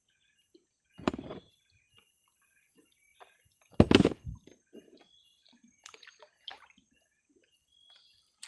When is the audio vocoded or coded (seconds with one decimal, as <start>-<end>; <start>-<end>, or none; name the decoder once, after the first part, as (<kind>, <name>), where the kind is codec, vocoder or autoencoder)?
none